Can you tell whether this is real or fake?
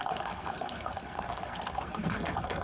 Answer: fake